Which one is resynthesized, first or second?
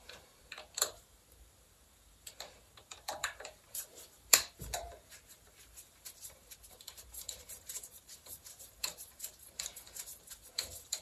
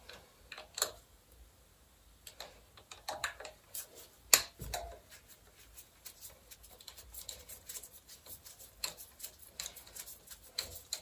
first